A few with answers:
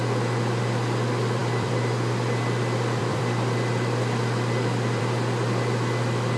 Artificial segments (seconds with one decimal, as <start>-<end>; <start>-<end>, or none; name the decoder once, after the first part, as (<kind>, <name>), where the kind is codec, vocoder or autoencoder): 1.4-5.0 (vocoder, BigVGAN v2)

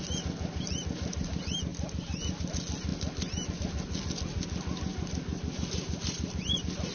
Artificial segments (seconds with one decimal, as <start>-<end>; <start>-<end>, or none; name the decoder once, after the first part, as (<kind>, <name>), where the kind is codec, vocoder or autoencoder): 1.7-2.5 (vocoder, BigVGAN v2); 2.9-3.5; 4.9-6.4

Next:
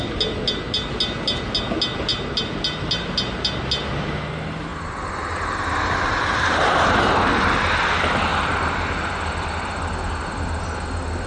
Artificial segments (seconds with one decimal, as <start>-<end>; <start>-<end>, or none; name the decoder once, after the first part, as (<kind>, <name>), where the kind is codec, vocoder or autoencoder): 4.7-7.0 (vocoder, BigVGAN v2)